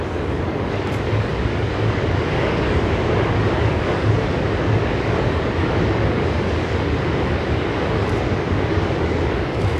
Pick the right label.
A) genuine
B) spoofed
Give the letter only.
B